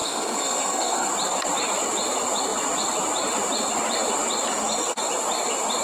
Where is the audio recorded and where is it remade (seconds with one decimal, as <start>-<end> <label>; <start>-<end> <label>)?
0.0-1.1 remade; 1.1-5.8 recorded